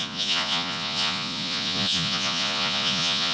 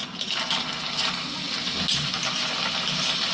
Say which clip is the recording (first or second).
second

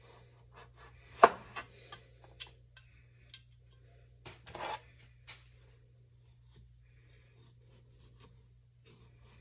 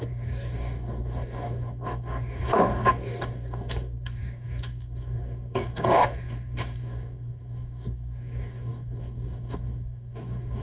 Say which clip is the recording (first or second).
first